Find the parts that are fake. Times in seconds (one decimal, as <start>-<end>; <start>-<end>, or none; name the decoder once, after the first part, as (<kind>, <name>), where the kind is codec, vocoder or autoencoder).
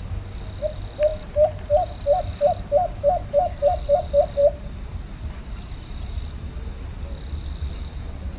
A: 1.1-2.5 (vocoder, BigVGAN v2); 4.4-6.2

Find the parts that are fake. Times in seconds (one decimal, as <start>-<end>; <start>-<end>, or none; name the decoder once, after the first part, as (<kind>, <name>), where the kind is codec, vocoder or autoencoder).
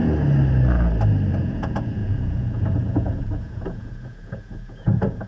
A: 1.3-5.3 (vocoder, Vocos)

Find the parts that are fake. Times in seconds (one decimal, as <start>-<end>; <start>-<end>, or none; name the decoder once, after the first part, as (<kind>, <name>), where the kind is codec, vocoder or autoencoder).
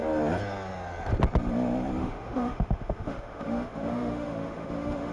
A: 2.0-5.1 (autoencoder, DAC-VAE)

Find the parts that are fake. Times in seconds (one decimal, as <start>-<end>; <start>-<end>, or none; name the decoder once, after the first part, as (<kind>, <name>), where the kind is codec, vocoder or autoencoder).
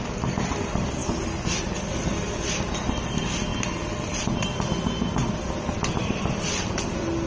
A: none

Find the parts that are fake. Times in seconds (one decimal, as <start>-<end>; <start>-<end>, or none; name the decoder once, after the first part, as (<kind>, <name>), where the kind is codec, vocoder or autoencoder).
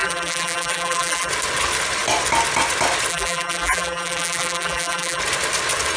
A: 0.0-1.3 (vocoder, BigVGAN v2); 3.1-5.2